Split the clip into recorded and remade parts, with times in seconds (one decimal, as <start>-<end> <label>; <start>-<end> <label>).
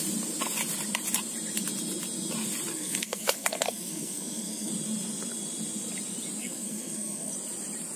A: 0.0-2.7 recorded; 2.7-4.7 remade; 4.7-6.4 recorded; 6.4-7.3 remade; 7.3-8.0 recorded